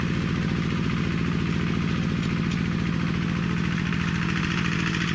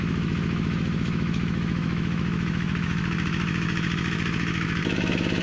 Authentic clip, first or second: first